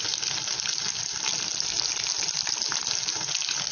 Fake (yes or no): no